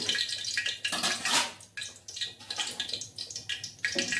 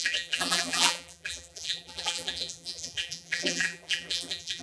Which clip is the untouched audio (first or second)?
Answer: first